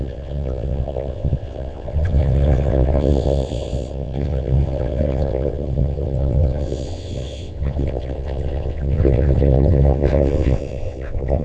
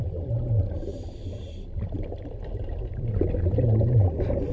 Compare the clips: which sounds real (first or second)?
second